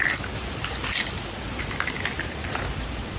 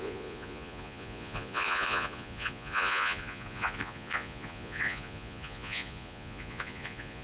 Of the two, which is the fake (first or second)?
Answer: second